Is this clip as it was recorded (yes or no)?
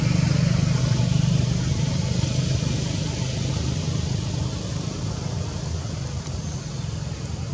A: yes